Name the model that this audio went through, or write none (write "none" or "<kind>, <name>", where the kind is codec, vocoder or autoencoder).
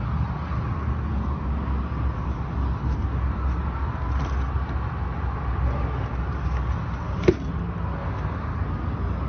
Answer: none